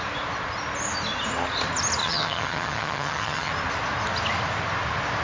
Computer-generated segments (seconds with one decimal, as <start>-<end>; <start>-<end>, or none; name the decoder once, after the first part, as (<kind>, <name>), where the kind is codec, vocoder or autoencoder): 2.0-3.5 (vocoder, HiFi-GAN)